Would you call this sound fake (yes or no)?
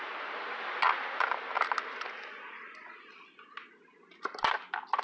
no